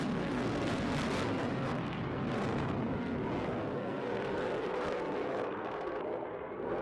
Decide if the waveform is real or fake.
fake